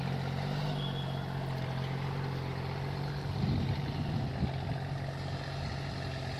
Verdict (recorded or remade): recorded